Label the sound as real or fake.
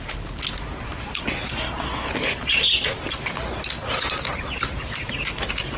real